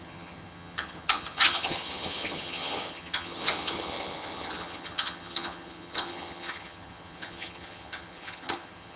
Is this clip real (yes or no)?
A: no